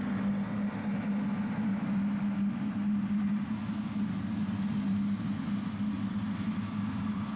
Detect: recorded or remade recorded